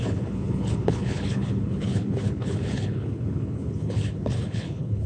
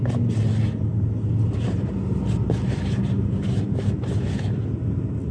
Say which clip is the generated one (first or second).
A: first